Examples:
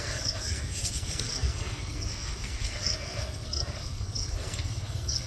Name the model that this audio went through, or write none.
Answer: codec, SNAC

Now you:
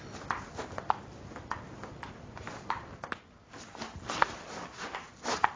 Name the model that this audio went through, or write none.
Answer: none